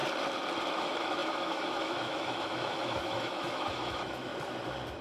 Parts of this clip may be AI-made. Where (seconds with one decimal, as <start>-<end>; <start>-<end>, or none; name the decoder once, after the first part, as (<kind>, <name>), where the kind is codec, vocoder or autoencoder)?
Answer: 0.7-4.3 (autoencoder, DAC-VAE)